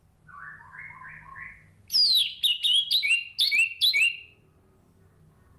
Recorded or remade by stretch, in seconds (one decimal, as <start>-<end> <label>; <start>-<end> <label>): 0.0-5.6 recorded